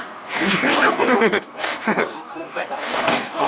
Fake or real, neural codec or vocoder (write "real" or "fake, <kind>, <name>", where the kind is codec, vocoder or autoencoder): fake, codec, DAC